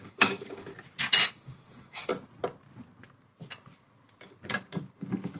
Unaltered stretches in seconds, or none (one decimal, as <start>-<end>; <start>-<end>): 0.7-1.3; 2.1-5.4